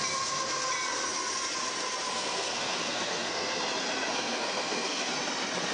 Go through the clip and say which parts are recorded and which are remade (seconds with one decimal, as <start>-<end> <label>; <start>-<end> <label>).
0.0-2.1 recorded; 2.1-3.6 remade; 3.6-4.1 recorded; 4.1-5.1 remade; 5.1-5.7 recorded

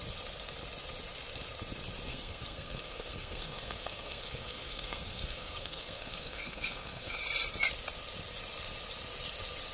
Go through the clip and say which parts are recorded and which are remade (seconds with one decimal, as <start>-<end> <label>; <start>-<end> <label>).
0.0-2.1 recorded; 2.1-7.2 remade; 7.2-9.7 recorded

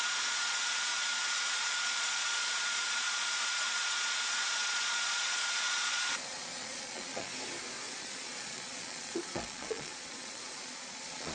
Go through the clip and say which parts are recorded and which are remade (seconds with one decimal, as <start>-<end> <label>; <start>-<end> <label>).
0.0-7.3 remade; 7.3-7.9 recorded; 7.9-11.3 remade

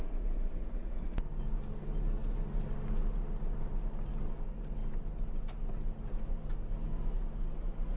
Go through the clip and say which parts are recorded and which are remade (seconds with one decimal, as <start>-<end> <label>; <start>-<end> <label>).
0.0-8.0 recorded

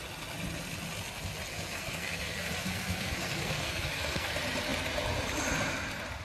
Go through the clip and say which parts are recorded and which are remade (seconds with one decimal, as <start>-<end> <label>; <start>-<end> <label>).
0.0-1.5 recorded; 1.5-4.3 remade; 4.3-6.2 recorded

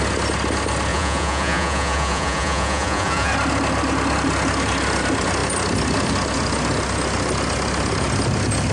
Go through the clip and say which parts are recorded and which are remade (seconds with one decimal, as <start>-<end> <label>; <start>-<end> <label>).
0.0-0.9 recorded; 0.9-3.3 remade; 3.3-8.7 recorded